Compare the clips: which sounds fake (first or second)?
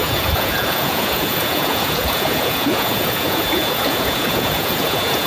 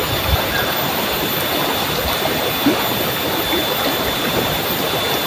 first